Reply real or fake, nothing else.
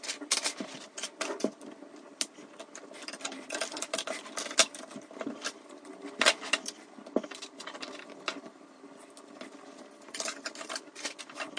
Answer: real